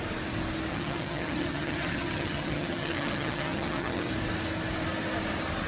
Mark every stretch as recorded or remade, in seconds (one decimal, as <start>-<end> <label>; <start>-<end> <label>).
0.0-0.7 recorded; 0.7-4.1 remade; 4.1-5.7 recorded